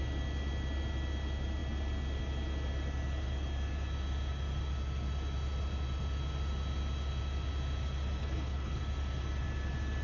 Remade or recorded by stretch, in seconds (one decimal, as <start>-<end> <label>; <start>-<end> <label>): 0.0-8.2 recorded; 8.2-8.8 remade; 8.8-10.0 recorded